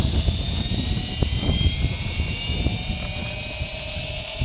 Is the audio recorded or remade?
remade